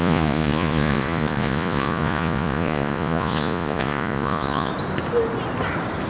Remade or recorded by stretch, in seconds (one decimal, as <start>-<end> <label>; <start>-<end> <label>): 0.0-4.7 remade; 4.7-6.1 recorded